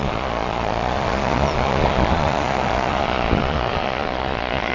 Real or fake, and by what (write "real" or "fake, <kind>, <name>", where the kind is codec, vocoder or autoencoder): fake, vocoder, Vocos